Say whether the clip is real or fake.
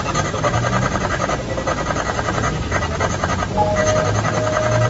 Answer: real